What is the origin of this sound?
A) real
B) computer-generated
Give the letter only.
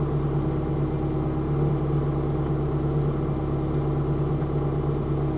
A